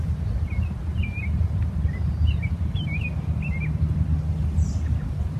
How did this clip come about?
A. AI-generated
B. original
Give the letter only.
B